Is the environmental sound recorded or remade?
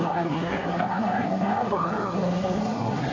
remade